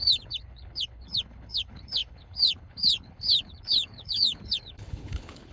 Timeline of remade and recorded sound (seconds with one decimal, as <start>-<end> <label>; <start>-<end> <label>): 0.0-5.5 remade